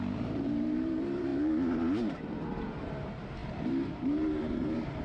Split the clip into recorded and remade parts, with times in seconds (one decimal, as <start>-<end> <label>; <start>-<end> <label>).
0.0-5.0 remade